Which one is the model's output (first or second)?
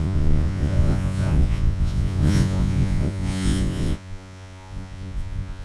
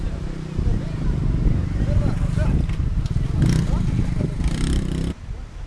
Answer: first